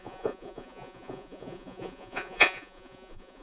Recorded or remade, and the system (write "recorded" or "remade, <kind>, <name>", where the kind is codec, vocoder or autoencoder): remade, vocoder, Vocos